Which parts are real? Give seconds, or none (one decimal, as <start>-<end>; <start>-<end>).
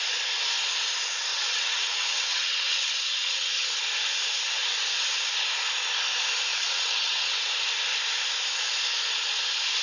0.0-1.3; 3.5-6.5; 7.5-9.8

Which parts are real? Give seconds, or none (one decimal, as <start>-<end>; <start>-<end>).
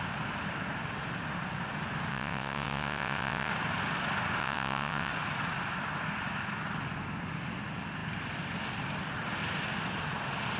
0.0-2.1; 3.5-4.4; 5.1-10.6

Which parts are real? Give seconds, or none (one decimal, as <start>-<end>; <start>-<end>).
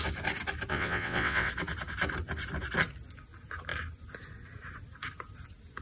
0.0-0.7; 1.5-5.8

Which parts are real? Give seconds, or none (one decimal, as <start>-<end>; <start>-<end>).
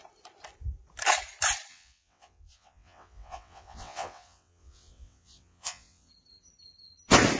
0.0-1.7; 6.1-7.4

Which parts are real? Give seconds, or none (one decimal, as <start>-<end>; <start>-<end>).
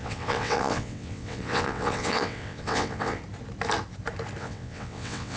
3.2-4.4